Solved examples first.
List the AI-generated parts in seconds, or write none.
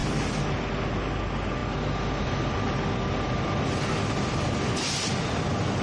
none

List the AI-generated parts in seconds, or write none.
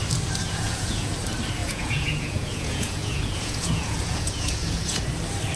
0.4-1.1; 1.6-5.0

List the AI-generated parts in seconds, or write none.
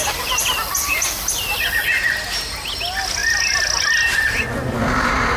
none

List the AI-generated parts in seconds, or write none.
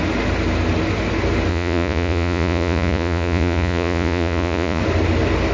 1.5-4.8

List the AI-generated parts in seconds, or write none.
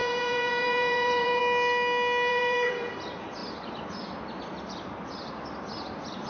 0.0-1.4; 2.3-2.9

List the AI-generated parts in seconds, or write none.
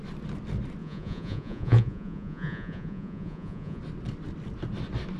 0.8-3.8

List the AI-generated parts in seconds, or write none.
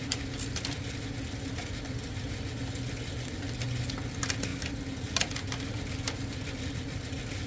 none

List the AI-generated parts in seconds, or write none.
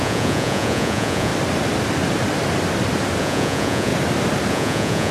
0.0-1.3; 3.2-3.9; 4.5-5.1